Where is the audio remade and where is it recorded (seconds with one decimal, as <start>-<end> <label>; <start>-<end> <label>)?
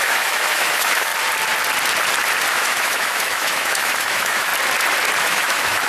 0.0-1.1 remade; 1.1-2.5 recorded; 2.5-4.5 remade; 4.5-5.2 recorded; 5.2-5.9 remade